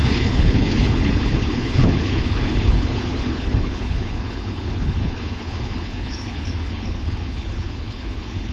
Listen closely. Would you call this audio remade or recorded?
remade